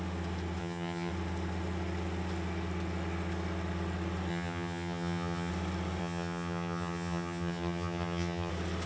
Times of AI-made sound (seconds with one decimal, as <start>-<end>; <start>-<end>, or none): 0.6-1.1; 4.3-5.5; 6.0-8.5